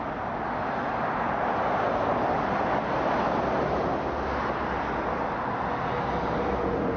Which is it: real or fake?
real